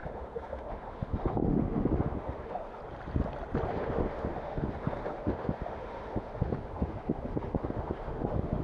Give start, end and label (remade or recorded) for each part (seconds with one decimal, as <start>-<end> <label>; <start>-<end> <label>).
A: 0.0-2.8 remade; 2.8-3.7 recorded; 3.7-8.6 remade